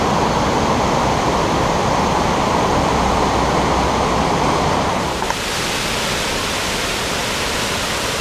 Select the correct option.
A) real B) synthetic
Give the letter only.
A